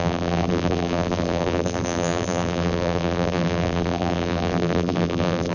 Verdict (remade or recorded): remade